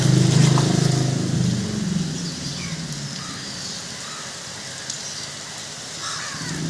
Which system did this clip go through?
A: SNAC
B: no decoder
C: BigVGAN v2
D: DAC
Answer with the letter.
B